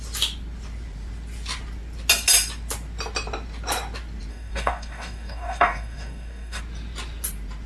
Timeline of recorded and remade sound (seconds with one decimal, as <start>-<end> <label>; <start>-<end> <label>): 0.0-4.3 recorded; 4.3-6.6 remade; 6.6-7.7 recorded